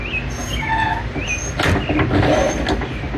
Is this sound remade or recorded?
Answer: recorded